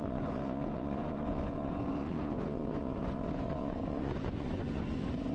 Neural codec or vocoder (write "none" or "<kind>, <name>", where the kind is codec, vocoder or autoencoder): vocoder, Vocos